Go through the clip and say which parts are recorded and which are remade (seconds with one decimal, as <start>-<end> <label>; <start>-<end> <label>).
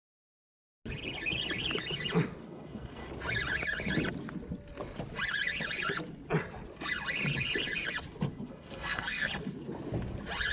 0.0-2.4 recorded; 2.4-3.1 remade; 3.1-8.3 recorded; 8.3-9.3 remade; 9.3-10.5 recorded